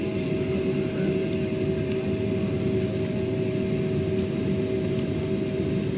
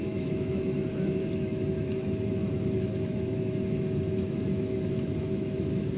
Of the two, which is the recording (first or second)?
first